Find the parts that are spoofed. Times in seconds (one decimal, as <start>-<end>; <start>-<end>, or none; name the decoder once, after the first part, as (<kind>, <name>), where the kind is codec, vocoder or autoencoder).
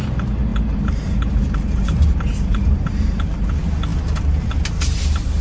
0.5-3.5 (vocoder, BigVGAN v2)